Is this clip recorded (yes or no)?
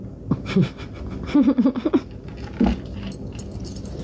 yes